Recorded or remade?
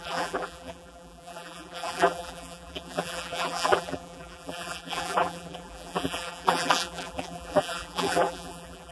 remade